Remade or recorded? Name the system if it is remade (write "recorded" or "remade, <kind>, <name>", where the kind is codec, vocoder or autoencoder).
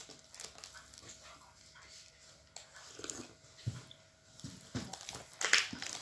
recorded